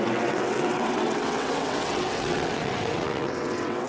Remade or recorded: remade